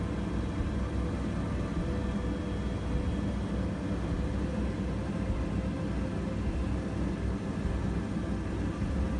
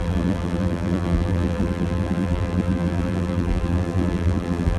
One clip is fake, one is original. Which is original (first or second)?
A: first